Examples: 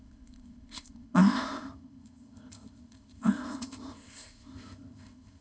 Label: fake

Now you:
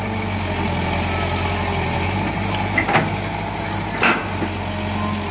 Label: real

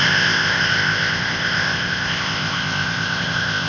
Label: fake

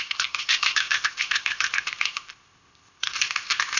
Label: fake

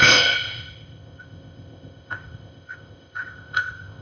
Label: fake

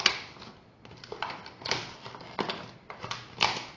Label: real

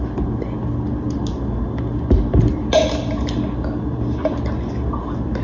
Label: real